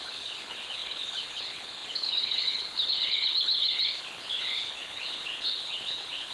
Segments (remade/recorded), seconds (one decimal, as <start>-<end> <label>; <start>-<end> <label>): 0.0-6.3 remade